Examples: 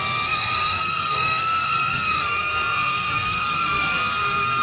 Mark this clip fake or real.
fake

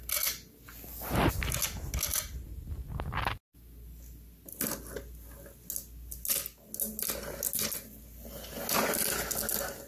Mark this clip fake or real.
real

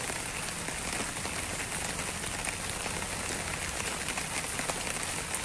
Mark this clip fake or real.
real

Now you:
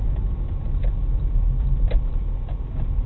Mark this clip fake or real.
real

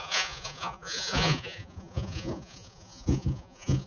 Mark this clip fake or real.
fake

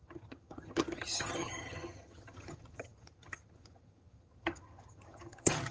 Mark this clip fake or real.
fake